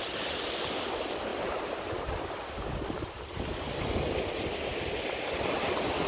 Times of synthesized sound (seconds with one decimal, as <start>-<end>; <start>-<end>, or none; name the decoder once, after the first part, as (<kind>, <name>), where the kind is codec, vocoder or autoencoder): none